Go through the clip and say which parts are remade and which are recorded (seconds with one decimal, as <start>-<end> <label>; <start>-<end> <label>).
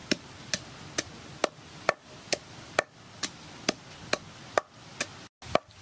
0.0-0.5 remade; 0.5-5.8 recorded